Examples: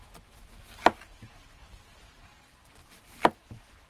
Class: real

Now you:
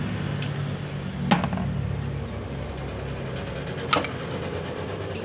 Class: real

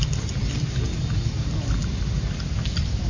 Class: real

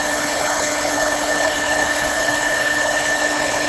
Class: fake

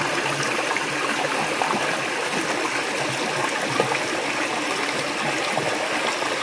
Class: real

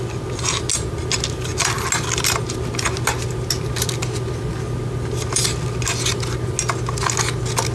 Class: real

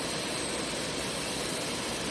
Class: fake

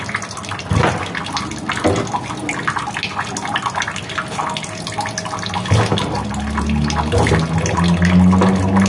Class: real